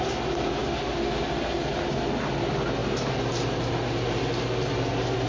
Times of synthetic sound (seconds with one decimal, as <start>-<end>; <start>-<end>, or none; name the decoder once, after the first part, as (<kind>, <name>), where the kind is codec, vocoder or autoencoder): none